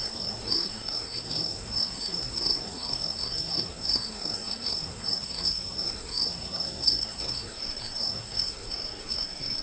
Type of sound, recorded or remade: remade